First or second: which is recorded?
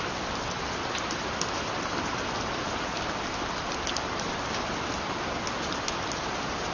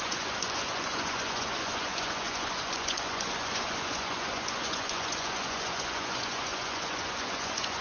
first